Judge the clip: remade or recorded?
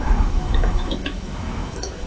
remade